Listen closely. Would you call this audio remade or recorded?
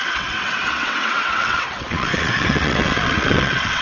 remade